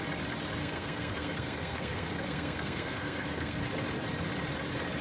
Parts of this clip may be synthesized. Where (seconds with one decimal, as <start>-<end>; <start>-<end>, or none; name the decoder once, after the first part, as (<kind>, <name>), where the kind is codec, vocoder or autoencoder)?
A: 0.6-3.6 (codec, SNAC)